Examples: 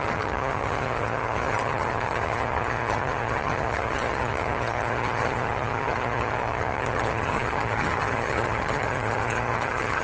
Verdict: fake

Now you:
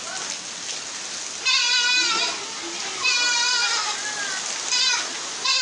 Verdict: real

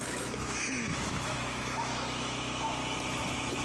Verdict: fake